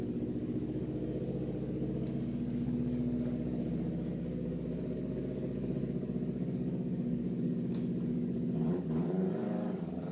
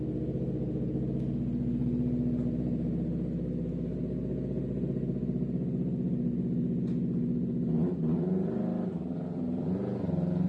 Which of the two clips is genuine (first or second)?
second